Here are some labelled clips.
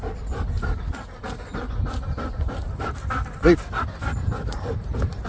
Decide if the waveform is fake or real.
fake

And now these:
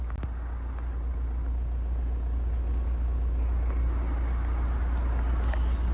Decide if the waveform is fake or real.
real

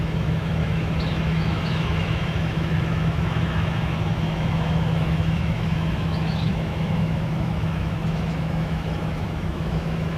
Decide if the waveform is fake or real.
fake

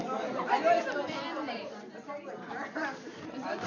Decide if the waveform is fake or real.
real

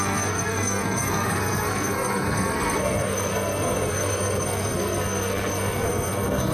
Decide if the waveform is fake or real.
fake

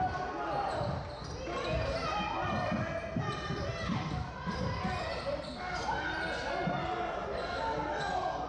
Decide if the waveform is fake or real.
real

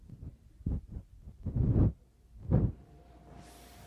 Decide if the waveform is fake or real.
real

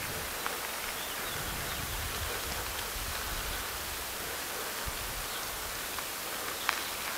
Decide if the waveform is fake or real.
real